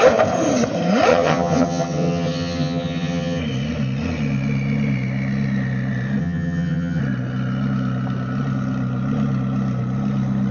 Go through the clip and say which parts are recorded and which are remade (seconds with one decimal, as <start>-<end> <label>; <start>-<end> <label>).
0.0-1.1 recorded; 1.1-3.4 remade; 3.4-6.2 recorded; 6.2-7.0 remade; 7.0-10.5 recorded